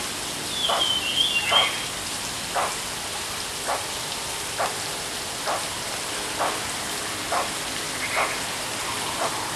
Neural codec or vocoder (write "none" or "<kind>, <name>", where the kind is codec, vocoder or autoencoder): none